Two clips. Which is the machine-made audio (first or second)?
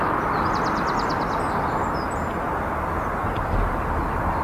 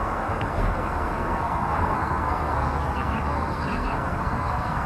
second